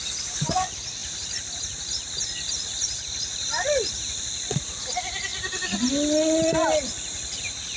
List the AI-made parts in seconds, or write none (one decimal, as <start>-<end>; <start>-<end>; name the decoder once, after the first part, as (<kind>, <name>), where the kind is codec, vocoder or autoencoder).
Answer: none